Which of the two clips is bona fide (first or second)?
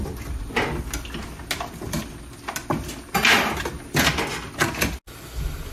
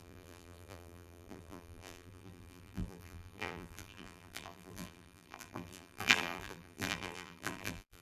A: first